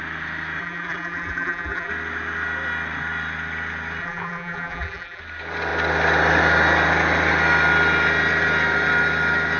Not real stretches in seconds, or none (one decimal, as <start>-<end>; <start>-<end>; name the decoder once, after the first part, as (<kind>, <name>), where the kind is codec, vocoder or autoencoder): 0.6-1.9 (vocoder, BigVGAN v2); 4.0-5.2